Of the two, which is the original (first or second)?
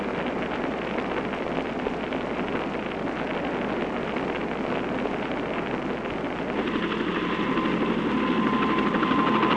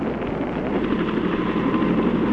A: first